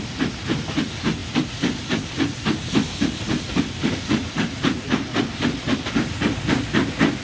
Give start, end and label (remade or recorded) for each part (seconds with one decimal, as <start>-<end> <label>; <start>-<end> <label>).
0.0-7.2 recorded